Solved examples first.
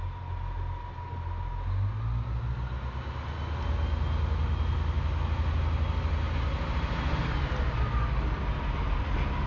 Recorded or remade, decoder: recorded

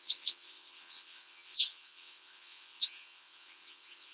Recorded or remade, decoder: remade, vocoder, WaveNeXt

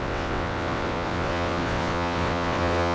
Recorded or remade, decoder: remade, vocoder, WaveNeXt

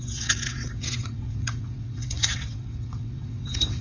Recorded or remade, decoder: remade, vocoder, WaveNeXt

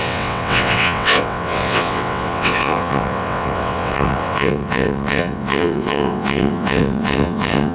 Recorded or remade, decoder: remade, vocoder, WaveNeXt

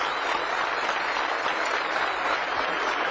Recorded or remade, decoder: recorded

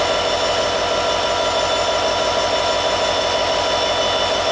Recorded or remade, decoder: recorded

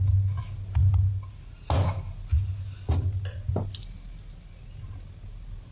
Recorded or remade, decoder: recorded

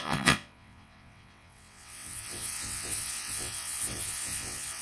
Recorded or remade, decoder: remade, vocoder, WaveNeXt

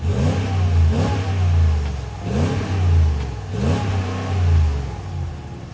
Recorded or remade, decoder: recorded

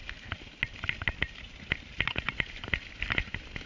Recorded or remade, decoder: recorded